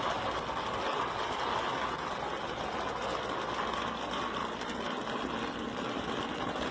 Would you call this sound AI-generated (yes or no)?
no